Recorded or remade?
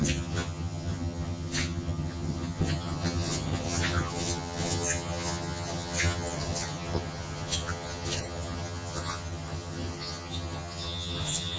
remade